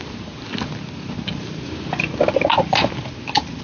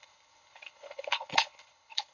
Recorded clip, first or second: first